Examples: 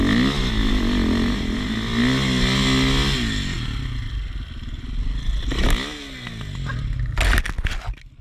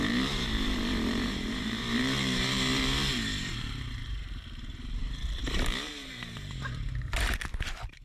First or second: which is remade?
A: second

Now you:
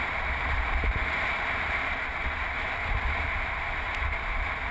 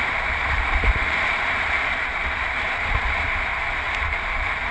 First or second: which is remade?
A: second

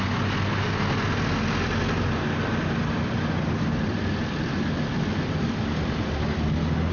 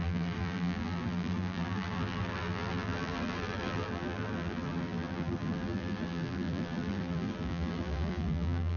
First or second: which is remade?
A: second